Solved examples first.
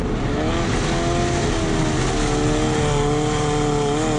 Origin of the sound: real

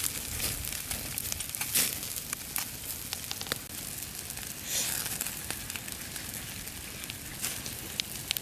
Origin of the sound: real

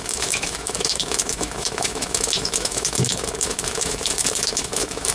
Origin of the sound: fake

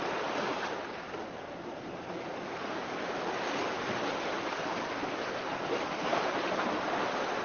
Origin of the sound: real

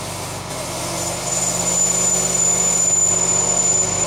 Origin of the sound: real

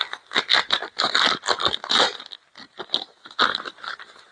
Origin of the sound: real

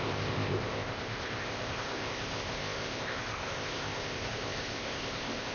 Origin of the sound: fake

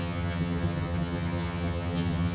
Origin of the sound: fake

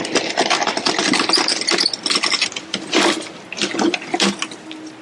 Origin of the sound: real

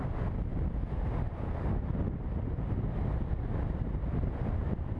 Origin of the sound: real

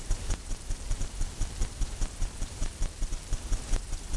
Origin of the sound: fake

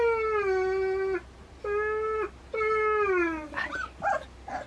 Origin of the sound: real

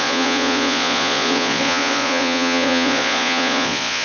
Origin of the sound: fake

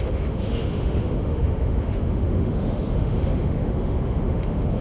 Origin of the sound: fake